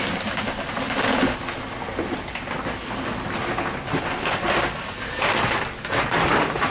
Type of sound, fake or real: real